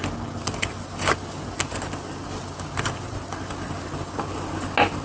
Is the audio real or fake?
real